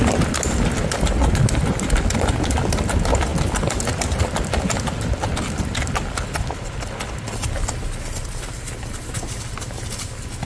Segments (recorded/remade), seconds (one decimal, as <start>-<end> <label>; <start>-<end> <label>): 0.0-10.5 recorded